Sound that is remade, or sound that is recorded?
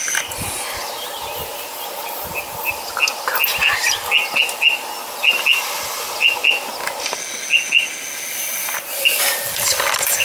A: recorded